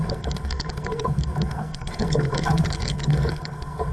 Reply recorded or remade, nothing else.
remade